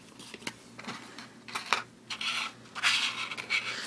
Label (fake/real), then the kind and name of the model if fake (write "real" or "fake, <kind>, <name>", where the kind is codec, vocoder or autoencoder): real